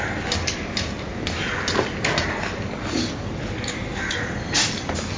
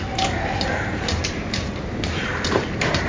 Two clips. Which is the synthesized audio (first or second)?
second